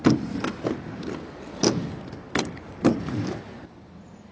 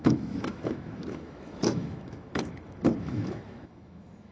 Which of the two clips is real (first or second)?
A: first